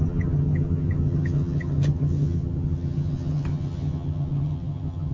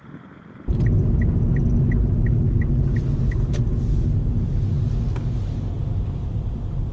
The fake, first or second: first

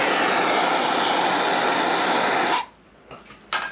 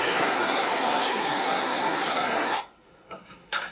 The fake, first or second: second